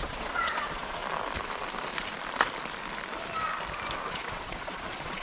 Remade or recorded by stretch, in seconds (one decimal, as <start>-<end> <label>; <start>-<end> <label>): 0.0-1.0 remade; 1.0-4.1 recorded; 4.1-5.2 remade